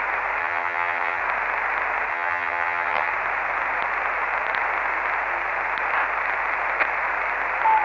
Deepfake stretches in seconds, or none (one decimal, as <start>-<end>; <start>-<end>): 0.4-1.2; 2.1-3.1